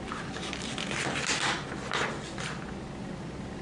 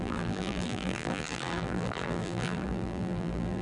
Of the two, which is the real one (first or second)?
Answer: first